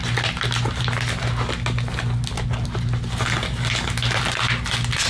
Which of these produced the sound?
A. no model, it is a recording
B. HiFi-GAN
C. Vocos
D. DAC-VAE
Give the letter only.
A